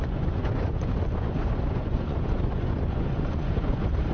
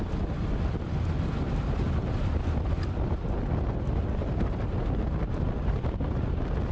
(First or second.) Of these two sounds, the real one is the second